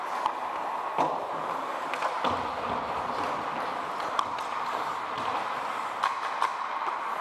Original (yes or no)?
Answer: yes